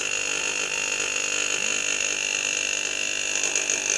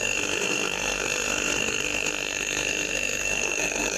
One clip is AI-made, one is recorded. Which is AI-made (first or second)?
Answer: second